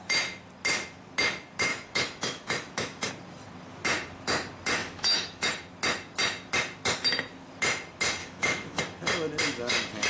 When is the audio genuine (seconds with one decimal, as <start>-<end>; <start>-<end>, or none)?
0.0-1.7; 3.1-4.8; 5.5-8.2; 8.8-10.1